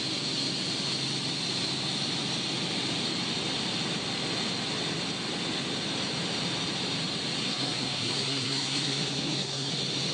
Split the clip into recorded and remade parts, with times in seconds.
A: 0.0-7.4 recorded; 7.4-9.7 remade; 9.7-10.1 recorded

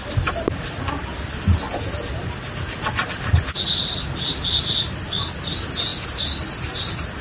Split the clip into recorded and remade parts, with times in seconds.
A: 0.0-7.2 recorded

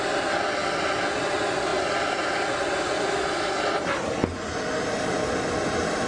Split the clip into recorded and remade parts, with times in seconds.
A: 0.0-6.1 recorded

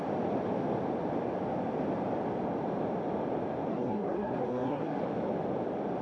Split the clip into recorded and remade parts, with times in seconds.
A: 0.0-3.7 recorded; 3.7-5.0 remade; 5.0-6.0 recorded